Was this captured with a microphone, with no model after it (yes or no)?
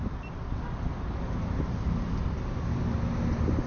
yes